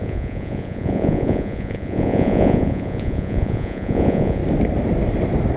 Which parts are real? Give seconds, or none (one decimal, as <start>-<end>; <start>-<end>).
4.4-5.6